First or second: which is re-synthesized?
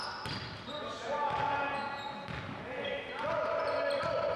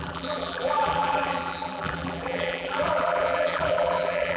second